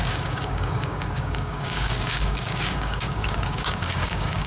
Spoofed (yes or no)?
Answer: yes